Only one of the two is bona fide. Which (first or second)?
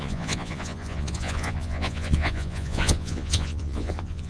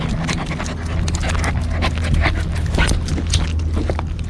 second